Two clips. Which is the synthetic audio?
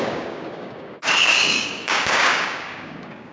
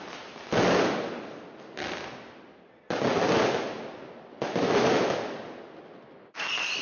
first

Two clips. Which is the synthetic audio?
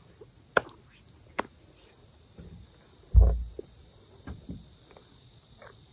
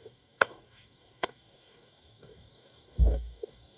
second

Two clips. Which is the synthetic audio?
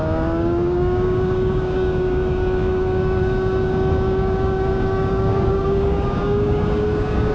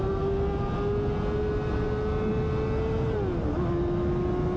first